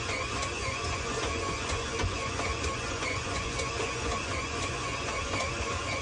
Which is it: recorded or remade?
remade